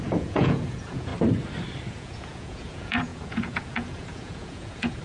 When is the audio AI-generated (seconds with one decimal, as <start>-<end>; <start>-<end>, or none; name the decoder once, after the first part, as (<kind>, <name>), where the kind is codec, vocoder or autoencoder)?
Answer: 0.0-1.1 (vocoder, Vocos); 1.9-5.0